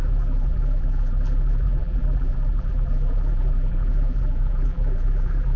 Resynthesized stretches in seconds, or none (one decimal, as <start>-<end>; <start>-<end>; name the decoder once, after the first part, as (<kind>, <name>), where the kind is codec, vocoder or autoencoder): 0.0-5.6 (vocoder, BigVGAN v2)